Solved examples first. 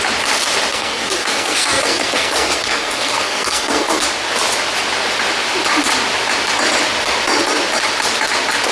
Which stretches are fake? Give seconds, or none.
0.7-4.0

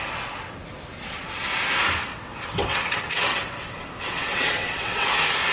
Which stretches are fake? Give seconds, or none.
2.1-2.8; 3.3-5.1

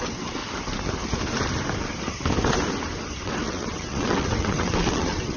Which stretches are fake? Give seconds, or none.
0.0-0.4; 3.2-5.4

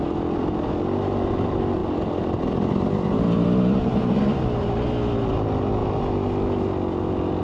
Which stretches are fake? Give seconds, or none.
1.8-3.7

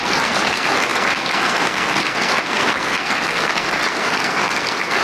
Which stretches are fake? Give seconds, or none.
0.0-5.0

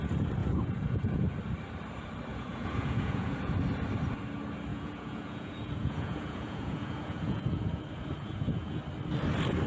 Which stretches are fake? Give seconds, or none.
0.4-1.3; 2.3-3.5; 4.7-8.8

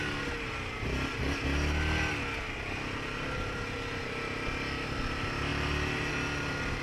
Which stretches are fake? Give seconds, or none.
none

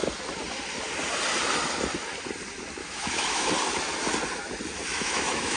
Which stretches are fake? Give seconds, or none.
2.8-3.5; 4.9-5.6